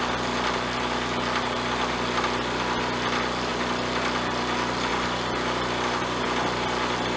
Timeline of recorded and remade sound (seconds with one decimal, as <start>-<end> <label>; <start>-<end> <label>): 0.0-7.2 recorded